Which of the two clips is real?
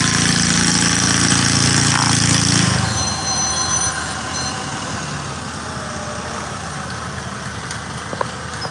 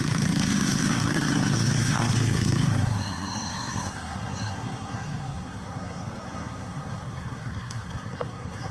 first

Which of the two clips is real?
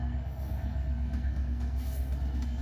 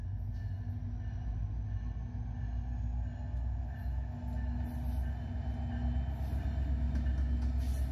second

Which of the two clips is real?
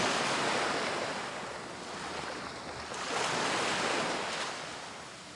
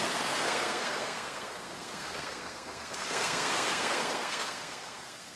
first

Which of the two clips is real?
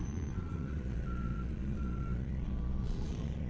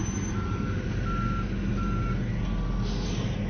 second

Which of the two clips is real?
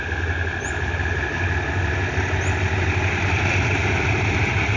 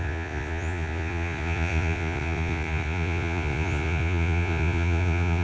first